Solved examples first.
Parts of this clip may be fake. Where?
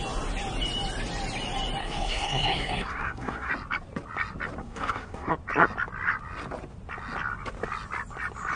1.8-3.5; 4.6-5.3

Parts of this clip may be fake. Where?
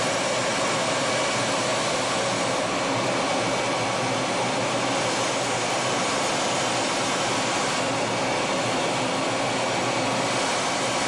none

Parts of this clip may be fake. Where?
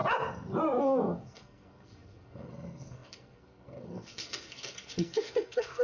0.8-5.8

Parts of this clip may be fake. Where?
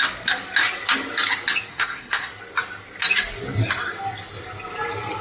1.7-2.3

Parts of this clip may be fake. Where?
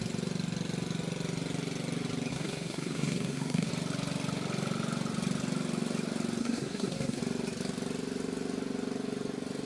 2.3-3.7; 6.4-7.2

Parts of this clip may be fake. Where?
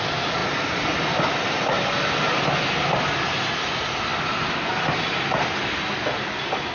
none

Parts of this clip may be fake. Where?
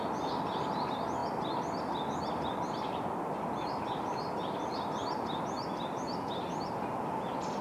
none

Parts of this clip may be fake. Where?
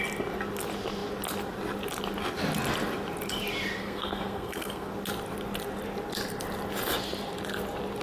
3.8-4.9